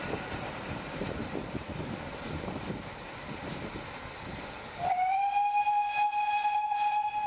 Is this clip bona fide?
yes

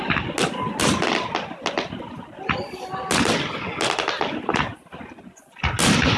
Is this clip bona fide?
yes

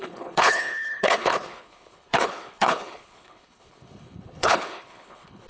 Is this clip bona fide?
no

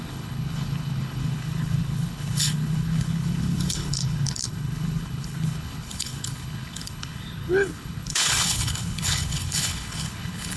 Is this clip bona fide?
no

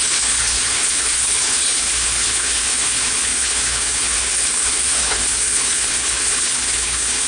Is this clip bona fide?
no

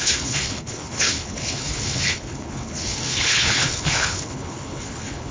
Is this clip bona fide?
no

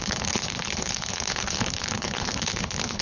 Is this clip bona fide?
no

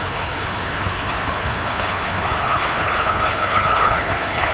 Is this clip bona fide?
no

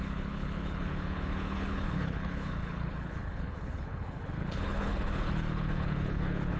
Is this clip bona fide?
no